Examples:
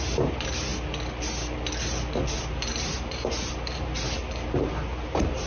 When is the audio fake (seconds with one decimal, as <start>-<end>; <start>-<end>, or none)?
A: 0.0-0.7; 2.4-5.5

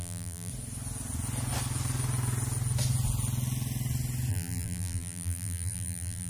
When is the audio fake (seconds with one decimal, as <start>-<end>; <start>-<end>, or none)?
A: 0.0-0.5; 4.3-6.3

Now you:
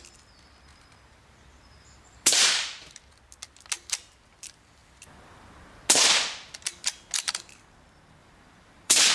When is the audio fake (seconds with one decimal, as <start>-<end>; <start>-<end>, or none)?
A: 0.7-2.9; 8.2-9.1

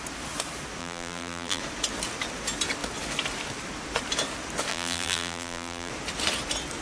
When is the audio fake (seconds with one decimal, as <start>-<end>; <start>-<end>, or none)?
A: 0.8-1.6; 4.7-5.9

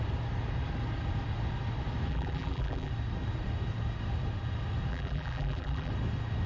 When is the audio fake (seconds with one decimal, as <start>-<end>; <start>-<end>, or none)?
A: 2.1-2.9; 4.9-5.9

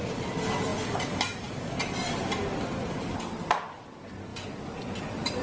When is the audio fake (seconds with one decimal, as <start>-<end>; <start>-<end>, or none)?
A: none

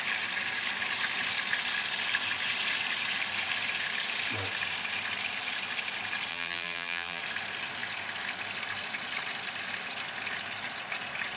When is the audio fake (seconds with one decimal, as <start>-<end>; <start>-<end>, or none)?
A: 6.3-7.2

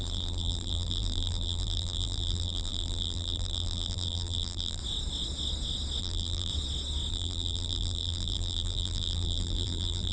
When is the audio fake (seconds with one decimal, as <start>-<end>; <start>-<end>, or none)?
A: 0.0-4.8; 6.0-6.5; 7.1-10.1